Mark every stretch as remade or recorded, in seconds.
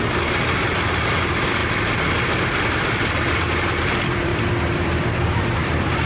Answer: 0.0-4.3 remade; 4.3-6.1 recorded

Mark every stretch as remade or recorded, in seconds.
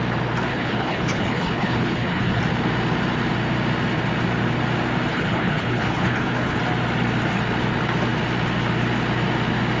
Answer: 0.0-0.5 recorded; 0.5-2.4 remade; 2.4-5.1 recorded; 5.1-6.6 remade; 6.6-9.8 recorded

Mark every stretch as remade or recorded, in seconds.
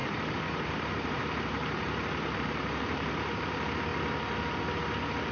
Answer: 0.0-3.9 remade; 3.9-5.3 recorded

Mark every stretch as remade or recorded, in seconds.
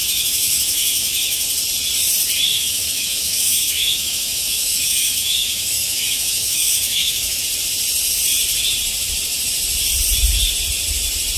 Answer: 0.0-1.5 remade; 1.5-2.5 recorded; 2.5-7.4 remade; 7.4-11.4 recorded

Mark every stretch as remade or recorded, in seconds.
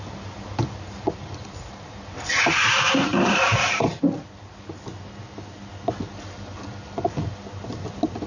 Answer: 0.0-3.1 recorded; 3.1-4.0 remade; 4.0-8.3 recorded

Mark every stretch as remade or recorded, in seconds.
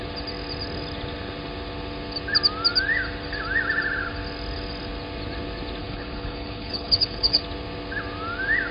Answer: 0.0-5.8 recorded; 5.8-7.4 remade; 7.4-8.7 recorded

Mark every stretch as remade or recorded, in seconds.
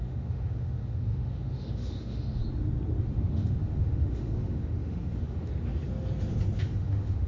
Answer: 0.0-2.4 remade; 2.4-3.0 recorded; 3.0-5.5 remade; 5.5-6.6 recorded; 6.6-7.3 remade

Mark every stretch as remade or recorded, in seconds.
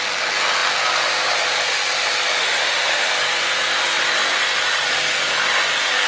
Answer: 0.0-2.4 recorded; 2.4-3.1 remade; 3.1-6.1 recorded